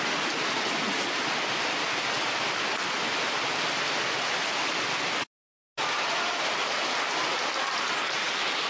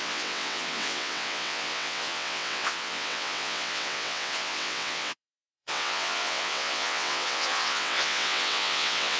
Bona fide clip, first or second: first